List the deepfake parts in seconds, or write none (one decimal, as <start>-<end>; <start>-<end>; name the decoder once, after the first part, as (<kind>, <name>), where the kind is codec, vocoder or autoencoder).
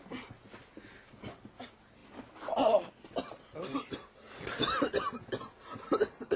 none